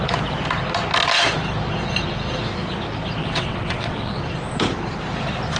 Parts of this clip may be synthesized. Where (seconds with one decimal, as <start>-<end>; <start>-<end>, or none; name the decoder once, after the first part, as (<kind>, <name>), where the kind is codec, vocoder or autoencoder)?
3.2-4.2 (vocoder, WaveNeXt)